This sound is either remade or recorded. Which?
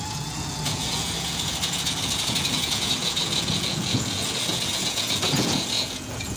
remade